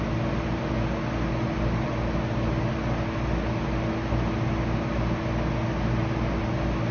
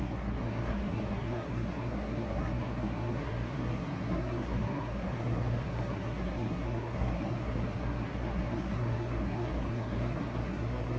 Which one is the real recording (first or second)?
first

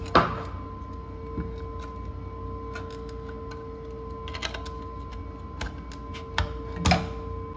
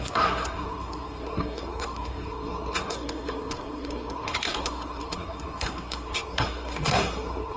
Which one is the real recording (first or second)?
first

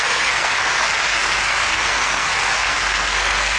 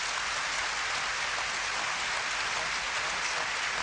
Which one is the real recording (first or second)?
second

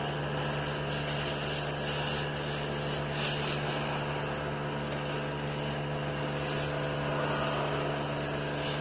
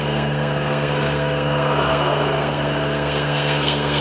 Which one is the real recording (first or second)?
first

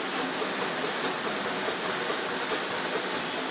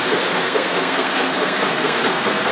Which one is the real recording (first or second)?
first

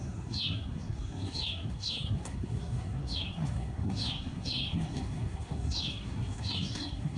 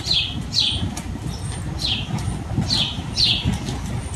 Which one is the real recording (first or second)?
second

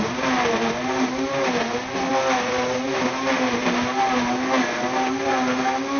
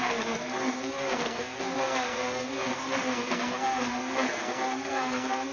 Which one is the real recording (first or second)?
first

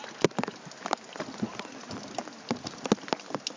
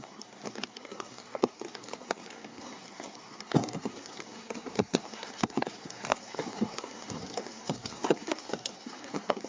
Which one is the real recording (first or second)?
first